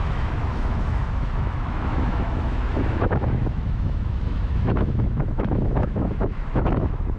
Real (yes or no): no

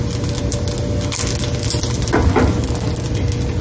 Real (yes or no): yes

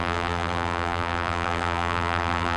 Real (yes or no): no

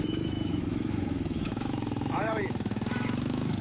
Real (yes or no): no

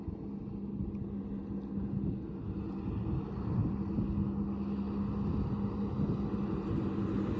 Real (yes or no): yes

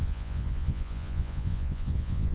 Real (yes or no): no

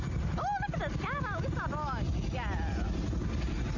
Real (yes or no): yes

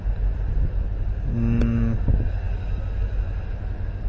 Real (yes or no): yes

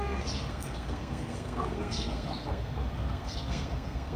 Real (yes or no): no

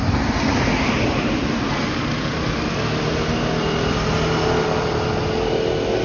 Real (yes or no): yes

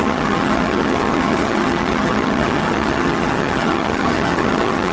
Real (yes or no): no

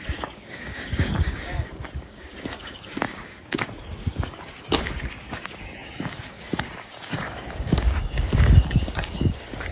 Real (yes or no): no